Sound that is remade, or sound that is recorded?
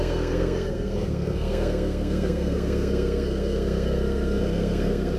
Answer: remade